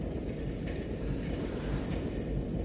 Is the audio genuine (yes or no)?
no